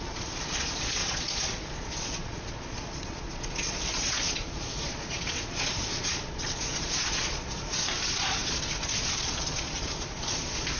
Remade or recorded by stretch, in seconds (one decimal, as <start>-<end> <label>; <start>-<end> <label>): 0.0-10.8 remade